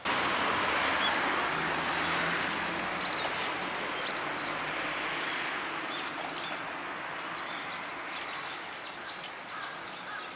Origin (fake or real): real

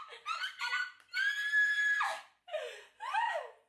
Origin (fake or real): fake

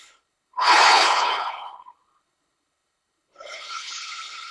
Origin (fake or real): fake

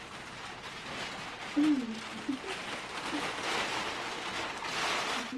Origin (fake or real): real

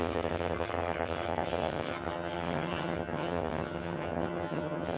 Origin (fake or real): fake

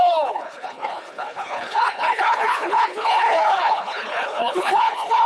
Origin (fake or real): fake